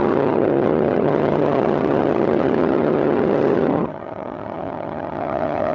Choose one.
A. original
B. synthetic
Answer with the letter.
B